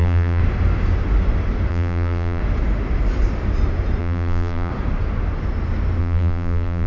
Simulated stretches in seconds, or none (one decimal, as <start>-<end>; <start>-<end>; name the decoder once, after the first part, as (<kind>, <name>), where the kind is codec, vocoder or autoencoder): 0.0-0.4 (vocoder, BigVGAN v2); 1.7-2.4; 4.0-4.7; 6.0-6.9